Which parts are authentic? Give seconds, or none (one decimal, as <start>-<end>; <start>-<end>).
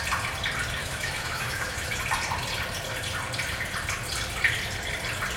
0.0-0.8; 2.0-5.4